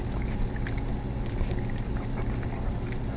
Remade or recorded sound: recorded